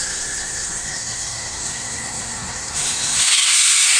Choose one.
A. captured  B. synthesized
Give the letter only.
B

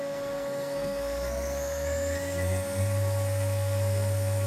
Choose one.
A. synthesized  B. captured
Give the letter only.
A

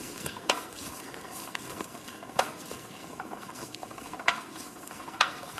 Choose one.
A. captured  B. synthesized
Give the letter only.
B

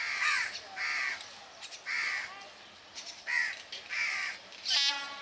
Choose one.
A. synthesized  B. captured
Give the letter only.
B